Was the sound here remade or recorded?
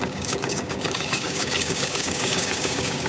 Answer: remade